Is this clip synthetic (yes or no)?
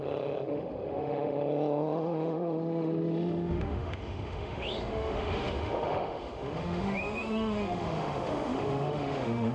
yes